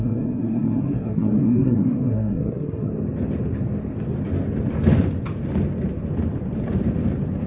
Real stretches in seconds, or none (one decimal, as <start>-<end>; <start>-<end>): 2.9-7.5